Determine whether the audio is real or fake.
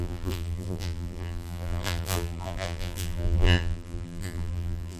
fake